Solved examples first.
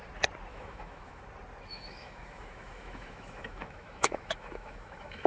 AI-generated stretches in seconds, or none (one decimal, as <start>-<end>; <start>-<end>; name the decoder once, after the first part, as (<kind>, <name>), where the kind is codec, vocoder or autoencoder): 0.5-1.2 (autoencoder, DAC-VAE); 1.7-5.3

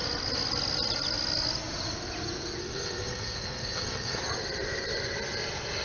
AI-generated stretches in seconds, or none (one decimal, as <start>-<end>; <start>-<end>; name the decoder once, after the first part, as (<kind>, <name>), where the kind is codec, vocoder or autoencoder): 2.6-4.2 (codec, SNAC)

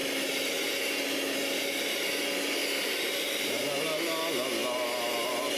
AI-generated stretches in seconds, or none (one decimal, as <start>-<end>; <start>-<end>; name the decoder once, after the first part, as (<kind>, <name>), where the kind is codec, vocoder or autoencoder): 2.6-3.6 (vocoder, BigVGAN v2)

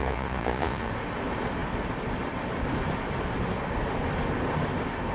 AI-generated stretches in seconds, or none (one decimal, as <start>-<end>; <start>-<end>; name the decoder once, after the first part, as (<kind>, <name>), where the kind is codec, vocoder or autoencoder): 0.0-0.9 (vocoder, Vocos)